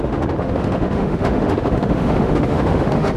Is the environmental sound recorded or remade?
remade